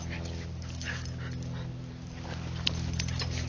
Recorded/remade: recorded